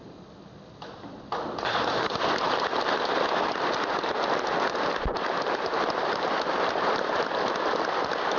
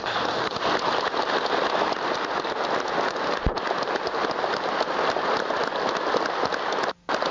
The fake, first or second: first